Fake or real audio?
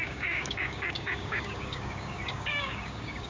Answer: fake